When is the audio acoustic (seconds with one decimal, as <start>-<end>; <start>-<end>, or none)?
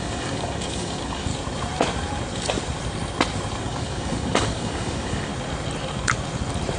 1.3-3.6; 5.3-6.8